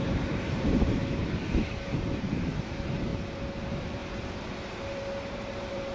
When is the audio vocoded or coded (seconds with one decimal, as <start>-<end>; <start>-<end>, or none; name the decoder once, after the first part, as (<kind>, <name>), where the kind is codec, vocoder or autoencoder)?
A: 0.0-1.0 (vocoder, BigVGAN v2); 2.2-3.1; 3.6-4.0; 5.3-5.9